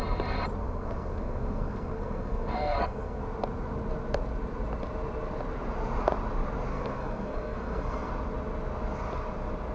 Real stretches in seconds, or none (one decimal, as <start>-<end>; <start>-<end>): 0.0-0.6; 3.2-6.7; 8.1-9.7